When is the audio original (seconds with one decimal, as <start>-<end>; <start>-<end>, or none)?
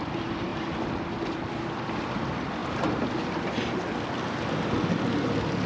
0.0-5.7